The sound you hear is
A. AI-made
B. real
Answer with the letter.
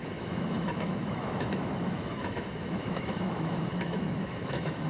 A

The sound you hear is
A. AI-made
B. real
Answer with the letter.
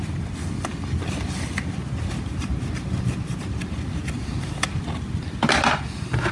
B